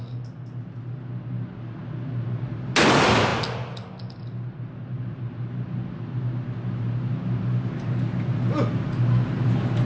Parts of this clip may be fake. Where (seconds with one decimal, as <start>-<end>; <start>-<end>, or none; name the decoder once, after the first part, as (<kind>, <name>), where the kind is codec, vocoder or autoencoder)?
none